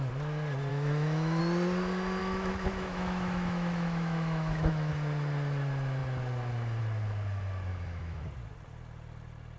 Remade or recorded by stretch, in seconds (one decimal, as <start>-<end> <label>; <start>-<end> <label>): 0.0-0.7 recorded; 0.7-1.4 remade; 1.4-2.2 recorded; 2.2-4.9 remade; 4.9-7.7 recorded; 7.7-8.2 remade; 8.2-9.6 recorded